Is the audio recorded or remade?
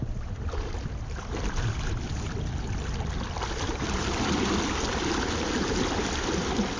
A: remade